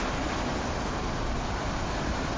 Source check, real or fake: real